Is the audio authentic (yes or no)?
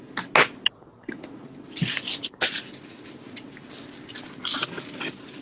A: yes